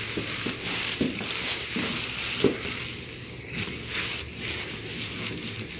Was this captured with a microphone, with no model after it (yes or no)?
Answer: yes